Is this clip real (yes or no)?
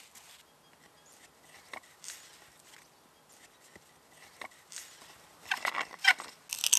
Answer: yes